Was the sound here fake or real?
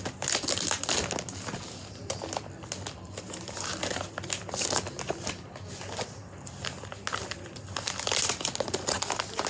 real